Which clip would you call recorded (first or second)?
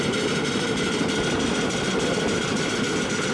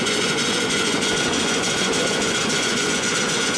first